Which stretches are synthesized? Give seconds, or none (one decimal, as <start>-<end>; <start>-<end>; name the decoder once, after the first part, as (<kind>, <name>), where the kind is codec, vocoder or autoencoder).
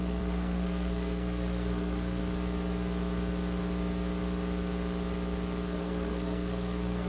0.0-2.2 (codec, SNAC); 5.8-7.1